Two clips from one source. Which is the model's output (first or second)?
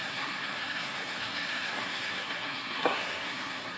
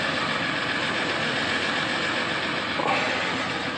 first